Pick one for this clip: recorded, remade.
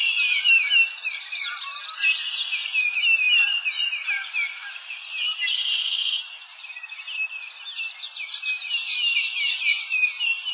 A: remade